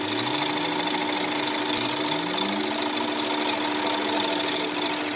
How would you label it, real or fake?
real